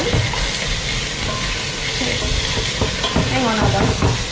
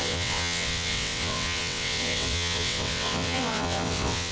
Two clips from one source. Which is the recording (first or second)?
first